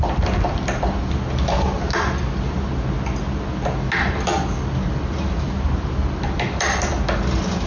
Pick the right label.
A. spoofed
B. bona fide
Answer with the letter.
B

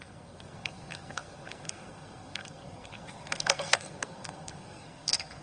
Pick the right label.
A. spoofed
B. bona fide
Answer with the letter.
A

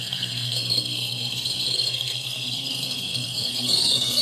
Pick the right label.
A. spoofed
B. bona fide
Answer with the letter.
A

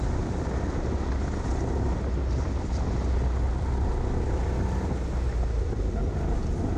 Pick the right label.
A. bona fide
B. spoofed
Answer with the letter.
A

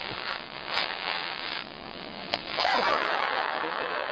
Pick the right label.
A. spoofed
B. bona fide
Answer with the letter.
A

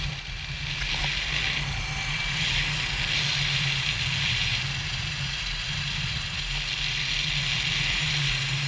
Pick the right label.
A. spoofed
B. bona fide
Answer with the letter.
B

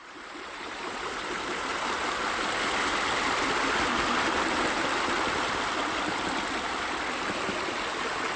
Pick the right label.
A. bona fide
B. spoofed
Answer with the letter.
A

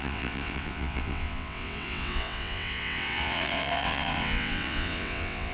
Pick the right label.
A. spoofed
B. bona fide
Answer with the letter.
A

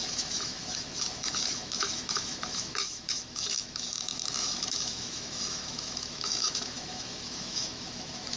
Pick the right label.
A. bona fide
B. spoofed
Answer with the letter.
B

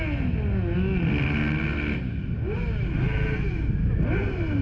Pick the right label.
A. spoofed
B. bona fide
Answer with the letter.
B